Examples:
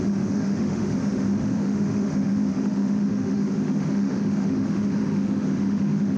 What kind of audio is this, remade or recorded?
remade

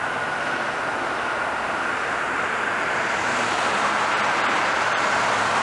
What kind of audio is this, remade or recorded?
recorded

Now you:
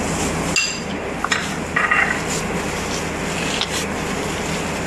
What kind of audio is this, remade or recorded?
recorded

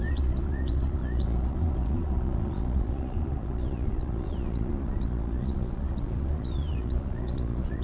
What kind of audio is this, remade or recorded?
remade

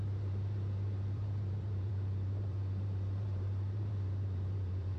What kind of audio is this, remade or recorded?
remade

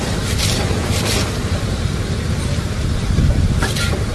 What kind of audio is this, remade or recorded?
remade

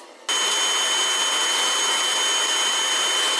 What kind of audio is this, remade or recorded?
recorded